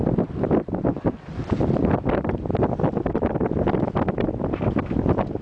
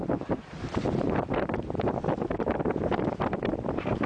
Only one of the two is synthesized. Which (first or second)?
second